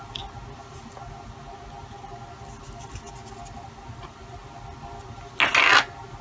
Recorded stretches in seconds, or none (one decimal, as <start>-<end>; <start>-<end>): 0.0-6.2